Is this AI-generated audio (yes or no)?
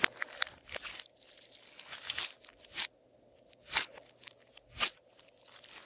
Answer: no